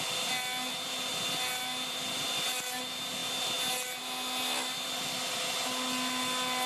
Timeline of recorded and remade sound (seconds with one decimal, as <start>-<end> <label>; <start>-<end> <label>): 0.0-6.7 recorded